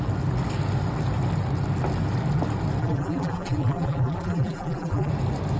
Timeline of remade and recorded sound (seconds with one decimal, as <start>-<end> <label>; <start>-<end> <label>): 0.0-2.8 recorded; 2.8-5.1 remade; 5.1-5.6 recorded